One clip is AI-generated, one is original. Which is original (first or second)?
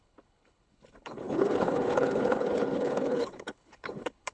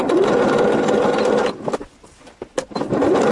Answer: second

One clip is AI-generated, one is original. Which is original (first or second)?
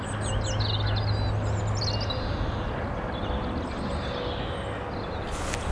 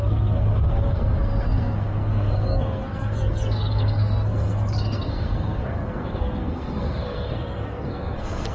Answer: first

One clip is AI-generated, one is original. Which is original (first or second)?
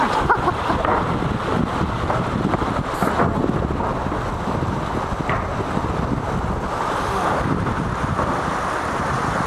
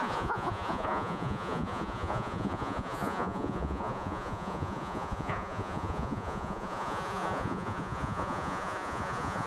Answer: first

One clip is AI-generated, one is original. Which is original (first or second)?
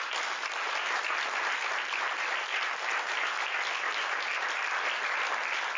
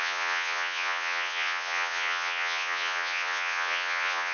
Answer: first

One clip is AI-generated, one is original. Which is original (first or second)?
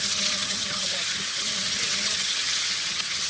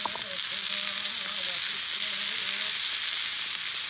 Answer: second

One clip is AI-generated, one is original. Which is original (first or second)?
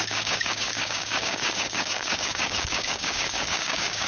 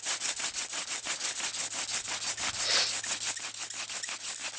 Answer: second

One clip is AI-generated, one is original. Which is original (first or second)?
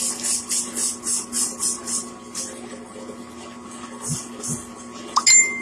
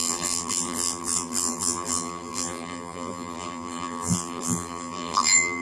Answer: first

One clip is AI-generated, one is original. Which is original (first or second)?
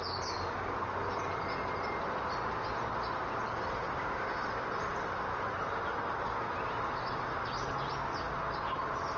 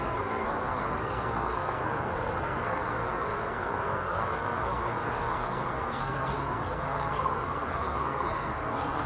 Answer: first